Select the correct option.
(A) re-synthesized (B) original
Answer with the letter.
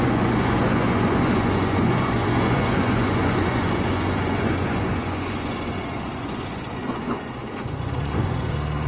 A